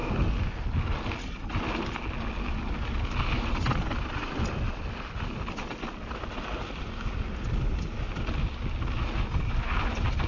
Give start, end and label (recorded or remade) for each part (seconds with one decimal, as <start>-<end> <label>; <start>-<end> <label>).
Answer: 0.0-10.3 recorded